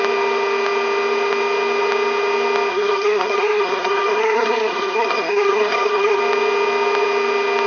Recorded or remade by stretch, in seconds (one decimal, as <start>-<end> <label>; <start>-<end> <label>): 0.0-2.7 recorded; 2.7-6.2 remade; 6.2-7.7 recorded